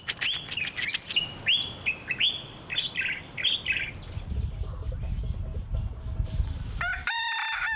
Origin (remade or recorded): recorded